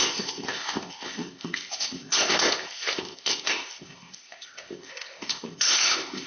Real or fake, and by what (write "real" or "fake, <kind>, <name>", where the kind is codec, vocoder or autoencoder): fake, codec, ZipCodec